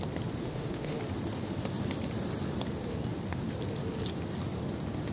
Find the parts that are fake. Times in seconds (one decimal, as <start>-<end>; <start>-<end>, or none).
0.4-1.0